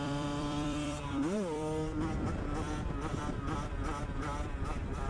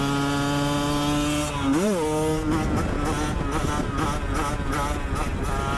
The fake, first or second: first